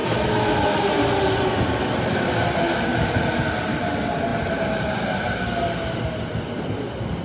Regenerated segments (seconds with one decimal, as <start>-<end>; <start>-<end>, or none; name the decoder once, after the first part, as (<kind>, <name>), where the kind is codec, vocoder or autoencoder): 0.0-0.9 (autoencoder, DAC-VAE)